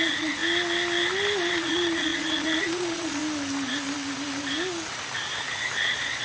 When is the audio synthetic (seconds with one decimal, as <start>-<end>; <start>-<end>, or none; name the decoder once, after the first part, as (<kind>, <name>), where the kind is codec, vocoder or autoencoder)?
0.0-0.4 (vocoder, Vocos); 1.5-3.2; 5.8-6.2